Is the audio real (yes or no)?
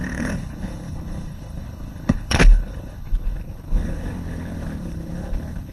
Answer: no